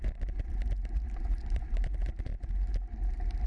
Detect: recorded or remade remade